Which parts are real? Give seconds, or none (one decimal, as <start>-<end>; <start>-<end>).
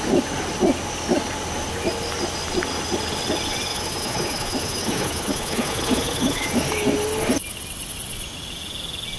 0.0-3.7; 6.5-9.2